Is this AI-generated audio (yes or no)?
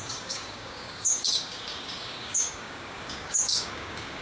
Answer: yes